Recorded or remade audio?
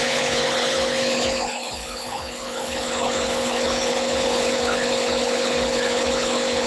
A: remade